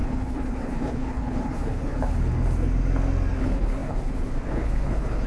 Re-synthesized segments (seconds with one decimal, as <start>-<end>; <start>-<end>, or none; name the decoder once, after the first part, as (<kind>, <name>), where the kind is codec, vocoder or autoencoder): 0.0-2.3 (codec, HILCodec); 3.4-5.3